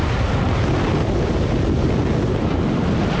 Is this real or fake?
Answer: real